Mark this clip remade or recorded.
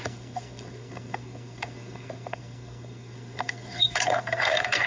remade